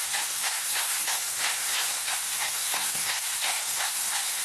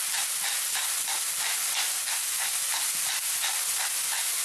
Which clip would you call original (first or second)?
second